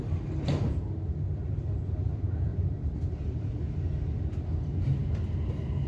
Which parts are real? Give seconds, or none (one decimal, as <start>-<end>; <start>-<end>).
0.0-2.5; 3.6-5.0